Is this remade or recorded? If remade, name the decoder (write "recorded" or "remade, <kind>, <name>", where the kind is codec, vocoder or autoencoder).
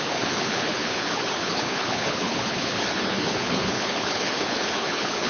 remade, codec, HILCodec